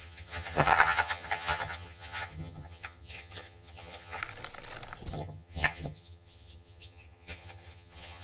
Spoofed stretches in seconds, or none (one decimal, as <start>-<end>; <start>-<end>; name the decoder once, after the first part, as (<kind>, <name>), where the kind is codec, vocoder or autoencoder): 0.0-4.2 (vocoder, HiFi-GAN); 5.1-8.2

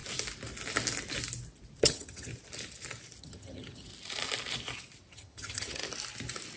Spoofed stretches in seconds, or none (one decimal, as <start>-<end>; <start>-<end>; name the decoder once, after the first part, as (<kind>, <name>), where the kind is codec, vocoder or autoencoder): 1.8-2.3 (vocoder, HiFi-GAN); 3.2-3.9; 5.1-5.8

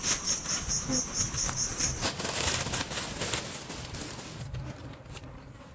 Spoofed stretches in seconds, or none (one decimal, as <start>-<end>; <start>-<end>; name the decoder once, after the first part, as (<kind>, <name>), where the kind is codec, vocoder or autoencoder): none

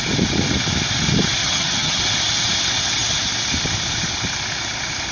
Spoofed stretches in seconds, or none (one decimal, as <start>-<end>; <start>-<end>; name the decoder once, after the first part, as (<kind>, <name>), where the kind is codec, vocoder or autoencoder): 1.4-2.0 (vocoder, HiFi-GAN)

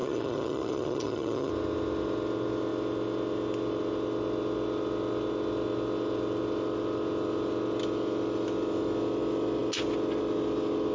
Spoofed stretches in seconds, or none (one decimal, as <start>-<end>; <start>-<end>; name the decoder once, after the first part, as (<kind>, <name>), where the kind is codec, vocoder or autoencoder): 0.0-1.5 (vocoder, HiFi-GAN)

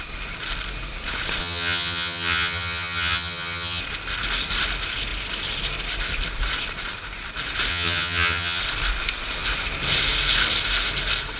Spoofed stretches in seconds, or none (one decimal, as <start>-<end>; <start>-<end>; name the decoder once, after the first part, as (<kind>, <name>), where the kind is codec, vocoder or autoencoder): 1.4-3.8 (vocoder, HiFi-GAN); 7.7-8.6

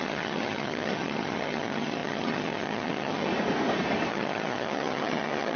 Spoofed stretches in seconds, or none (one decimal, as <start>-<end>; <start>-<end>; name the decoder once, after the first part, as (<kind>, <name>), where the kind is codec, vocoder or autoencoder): 0.0-3.3 (vocoder, HiFi-GAN); 4.1-5.6